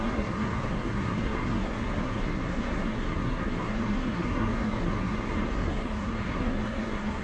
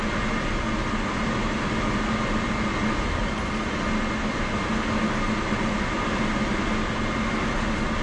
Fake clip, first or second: first